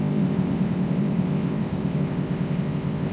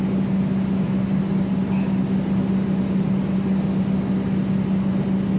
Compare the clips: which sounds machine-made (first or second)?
first